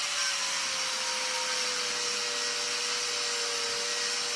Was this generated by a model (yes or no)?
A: no